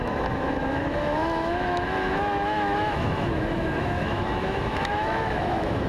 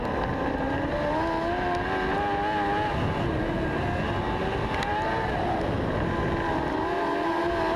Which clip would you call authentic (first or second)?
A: second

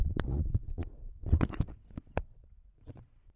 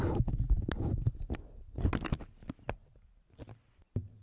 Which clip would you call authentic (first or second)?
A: second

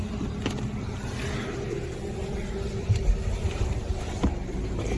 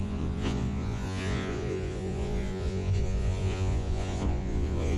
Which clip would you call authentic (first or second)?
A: first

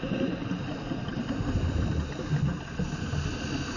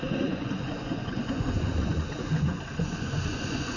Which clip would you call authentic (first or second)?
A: first